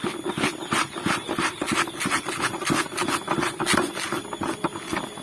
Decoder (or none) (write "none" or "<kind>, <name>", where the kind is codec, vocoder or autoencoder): none